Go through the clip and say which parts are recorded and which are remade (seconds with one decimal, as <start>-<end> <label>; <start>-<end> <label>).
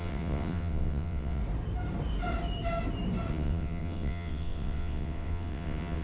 0.0-1.4 remade; 1.4-3.3 recorded; 3.3-6.0 remade